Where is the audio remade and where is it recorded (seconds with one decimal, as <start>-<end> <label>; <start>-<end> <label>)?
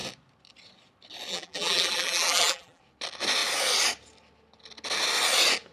0.0-1.3 recorded; 1.3-2.8 remade; 2.8-5.7 recorded